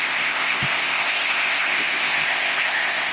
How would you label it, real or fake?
fake